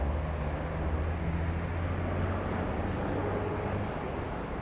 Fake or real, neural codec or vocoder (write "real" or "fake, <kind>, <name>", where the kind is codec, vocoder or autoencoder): real